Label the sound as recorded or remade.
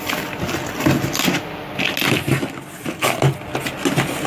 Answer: recorded